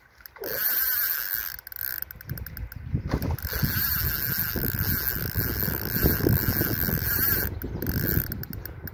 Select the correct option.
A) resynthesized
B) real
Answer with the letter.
B